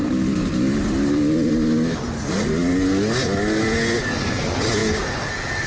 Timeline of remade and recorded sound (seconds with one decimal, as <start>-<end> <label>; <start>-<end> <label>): 0.0-5.7 recorded